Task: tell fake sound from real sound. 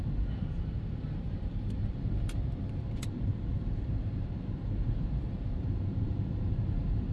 fake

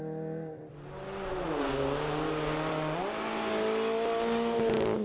real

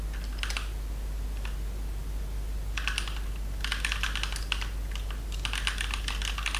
real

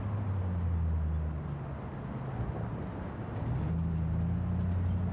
real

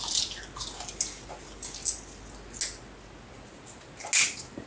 real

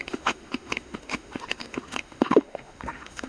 fake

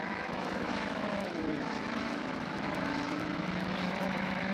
fake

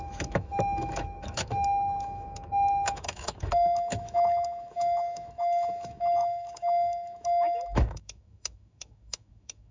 fake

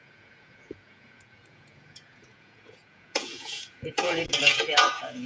fake